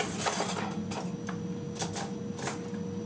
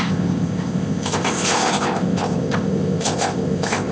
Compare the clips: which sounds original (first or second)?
first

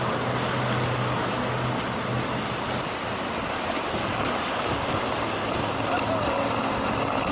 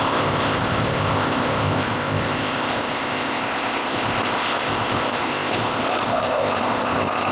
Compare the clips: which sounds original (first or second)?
first